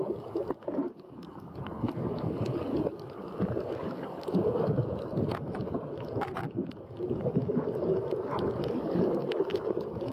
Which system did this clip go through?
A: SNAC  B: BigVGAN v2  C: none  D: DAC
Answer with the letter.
D